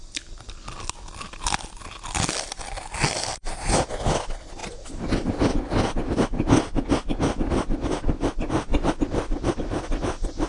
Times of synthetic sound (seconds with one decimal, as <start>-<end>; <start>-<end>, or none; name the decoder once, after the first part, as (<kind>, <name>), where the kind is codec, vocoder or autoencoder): none